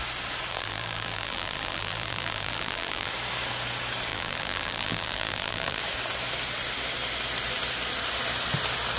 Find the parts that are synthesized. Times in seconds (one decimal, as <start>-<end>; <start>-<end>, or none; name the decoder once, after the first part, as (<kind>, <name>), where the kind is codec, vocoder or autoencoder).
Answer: 0.5-3.1 (vocoder, BigVGAN v2); 4.1-5.8